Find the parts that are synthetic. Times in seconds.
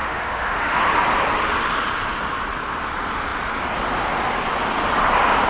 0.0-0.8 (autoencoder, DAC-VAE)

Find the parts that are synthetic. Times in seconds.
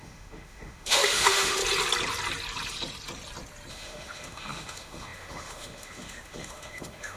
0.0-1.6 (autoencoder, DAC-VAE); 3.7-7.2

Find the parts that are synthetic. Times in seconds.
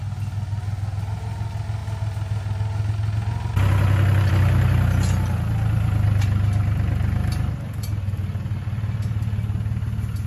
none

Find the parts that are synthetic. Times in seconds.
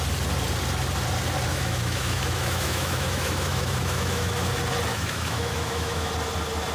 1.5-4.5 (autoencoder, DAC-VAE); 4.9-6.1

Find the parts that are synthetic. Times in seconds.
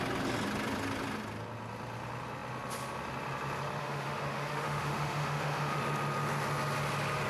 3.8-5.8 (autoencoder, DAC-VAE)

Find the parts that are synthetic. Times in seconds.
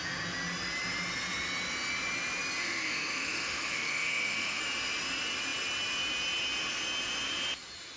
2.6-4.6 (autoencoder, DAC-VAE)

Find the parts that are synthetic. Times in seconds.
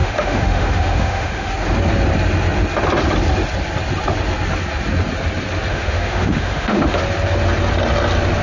0.0-1.5 (autoencoder, DAC-VAE); 5.7-7.0